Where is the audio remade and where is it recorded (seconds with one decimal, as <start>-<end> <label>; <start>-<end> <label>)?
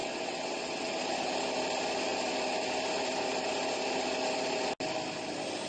0.0-0.9 remade; 0.9-5.7 recorded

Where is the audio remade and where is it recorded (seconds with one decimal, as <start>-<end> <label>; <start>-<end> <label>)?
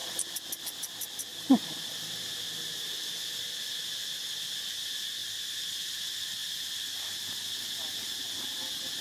0.0-0.6 remade; 0.6-1.3 recorded; 1.3-3.4 remade; 3.4-9.0 recorded